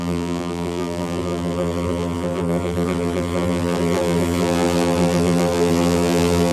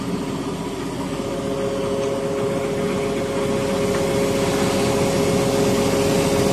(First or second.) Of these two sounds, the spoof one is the first